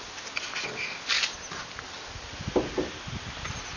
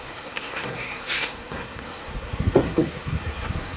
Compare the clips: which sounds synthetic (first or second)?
second